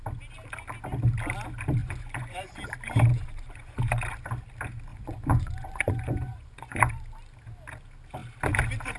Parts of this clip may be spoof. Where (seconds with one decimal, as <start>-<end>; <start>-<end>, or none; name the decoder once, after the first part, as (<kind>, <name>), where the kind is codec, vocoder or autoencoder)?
1.8-2.6 (vocoder, Vocos); 3.1-3.8; 4.9-6.9